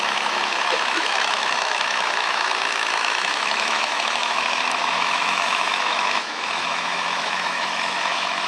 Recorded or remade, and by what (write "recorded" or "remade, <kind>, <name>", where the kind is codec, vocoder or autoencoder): remade, autoencoder, DAC-VAE